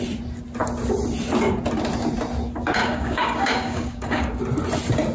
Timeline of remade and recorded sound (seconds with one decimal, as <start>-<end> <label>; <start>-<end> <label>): 0.0-2.8 recorded; 2.8-4.4 remade; 4.4-5.1 recorded